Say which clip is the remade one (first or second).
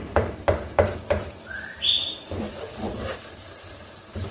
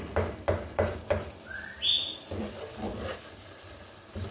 first